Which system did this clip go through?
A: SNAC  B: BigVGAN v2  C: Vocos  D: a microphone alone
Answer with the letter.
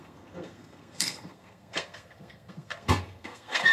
A